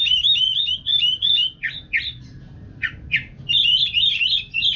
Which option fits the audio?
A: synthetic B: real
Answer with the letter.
B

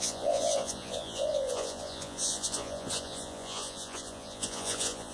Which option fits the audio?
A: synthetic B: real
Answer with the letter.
A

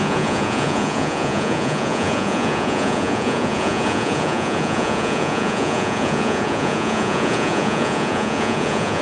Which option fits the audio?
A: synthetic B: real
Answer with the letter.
A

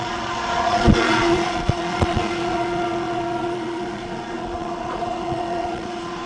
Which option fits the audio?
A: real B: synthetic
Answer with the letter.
B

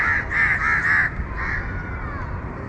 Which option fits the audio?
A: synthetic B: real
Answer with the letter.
B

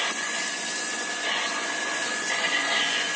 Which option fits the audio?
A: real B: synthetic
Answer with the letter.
B